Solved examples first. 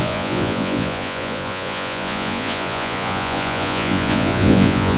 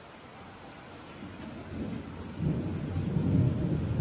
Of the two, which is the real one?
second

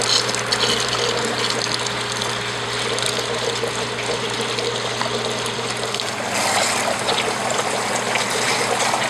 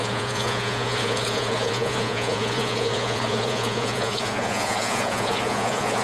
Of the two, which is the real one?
first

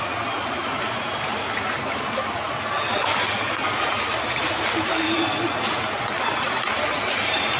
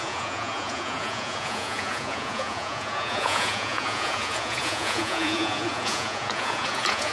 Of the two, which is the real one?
first